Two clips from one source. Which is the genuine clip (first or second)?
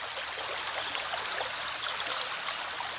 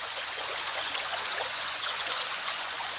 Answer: first